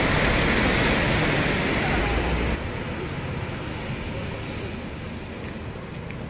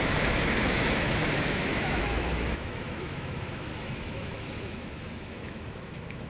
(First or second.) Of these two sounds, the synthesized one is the second